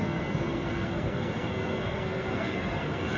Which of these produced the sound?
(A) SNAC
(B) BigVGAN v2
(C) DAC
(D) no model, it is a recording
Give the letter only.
A